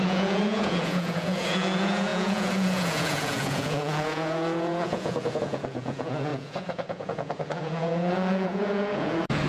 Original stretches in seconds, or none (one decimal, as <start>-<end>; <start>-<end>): none